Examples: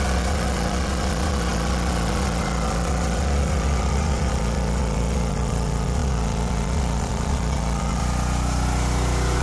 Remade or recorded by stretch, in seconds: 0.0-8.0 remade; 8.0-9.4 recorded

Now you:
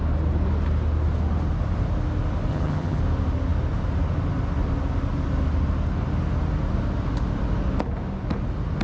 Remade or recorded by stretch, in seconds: 0.0-2.5 recorded; 2.5-3.0 remade; 3.0-8.8 recorded

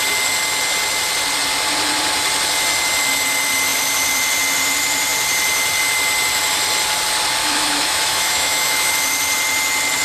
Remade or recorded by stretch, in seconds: 0.0-7.4 recorded; 7.4-8.9 remade; 8.9-10.0 recorded

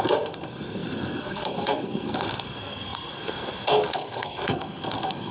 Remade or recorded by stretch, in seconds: 0.0-5.3 remade